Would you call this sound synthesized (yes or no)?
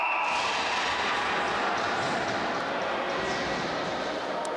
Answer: no